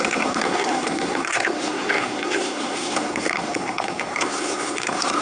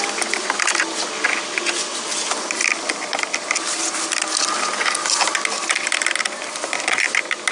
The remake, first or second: first